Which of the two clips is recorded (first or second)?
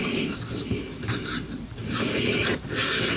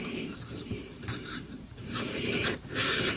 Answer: first